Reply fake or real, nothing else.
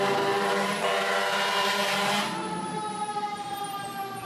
fake